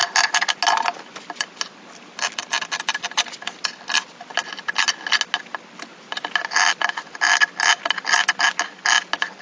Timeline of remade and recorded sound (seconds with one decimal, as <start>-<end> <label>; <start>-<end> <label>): 0.0-9.4 recorded